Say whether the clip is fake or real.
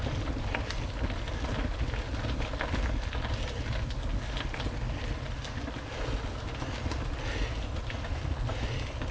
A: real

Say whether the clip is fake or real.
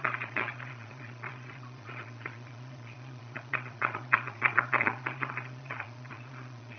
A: fake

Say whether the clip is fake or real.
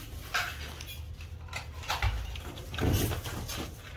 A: real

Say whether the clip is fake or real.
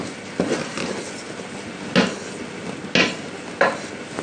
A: real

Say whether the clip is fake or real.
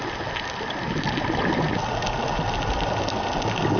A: real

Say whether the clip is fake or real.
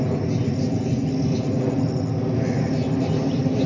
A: real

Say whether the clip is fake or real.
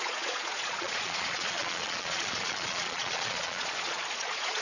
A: fake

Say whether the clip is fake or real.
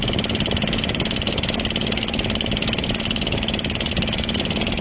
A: real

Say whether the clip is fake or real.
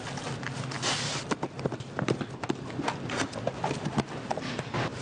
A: real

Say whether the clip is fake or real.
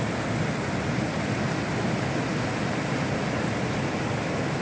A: real